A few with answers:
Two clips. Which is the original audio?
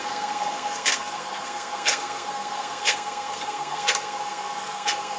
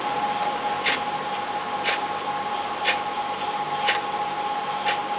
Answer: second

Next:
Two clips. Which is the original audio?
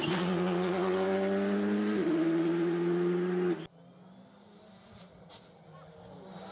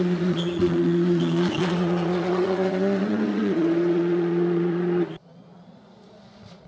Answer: first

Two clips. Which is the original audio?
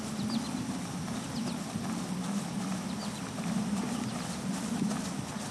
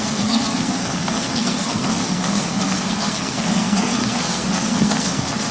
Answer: first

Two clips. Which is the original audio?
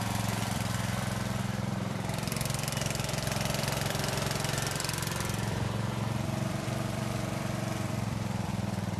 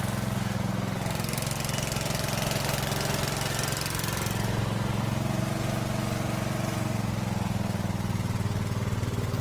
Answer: second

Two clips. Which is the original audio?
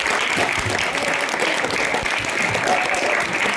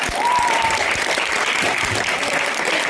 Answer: first